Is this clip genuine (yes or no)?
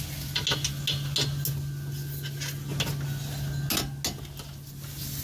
yes